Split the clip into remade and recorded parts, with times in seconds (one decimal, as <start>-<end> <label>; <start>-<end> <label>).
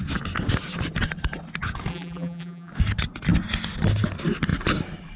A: 0.0-1.9 recorded; 1.9-2.7 remade; 2.7-5.2 recorded